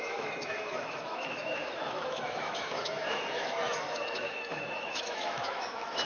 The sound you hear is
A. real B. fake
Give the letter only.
B